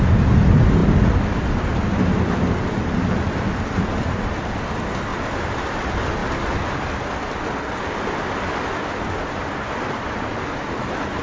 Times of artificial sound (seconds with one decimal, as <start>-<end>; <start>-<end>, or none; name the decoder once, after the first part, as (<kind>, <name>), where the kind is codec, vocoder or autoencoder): 0.8-4.5 (vocoder, BigVGAN v2); 5.1-5.8